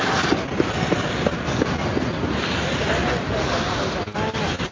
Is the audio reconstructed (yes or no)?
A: no